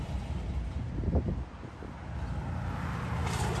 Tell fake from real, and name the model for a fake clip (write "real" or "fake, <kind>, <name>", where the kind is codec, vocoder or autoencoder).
real